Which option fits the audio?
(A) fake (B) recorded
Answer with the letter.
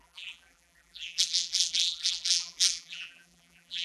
A